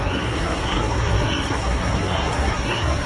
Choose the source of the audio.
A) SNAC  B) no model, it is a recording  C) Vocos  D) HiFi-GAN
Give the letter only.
A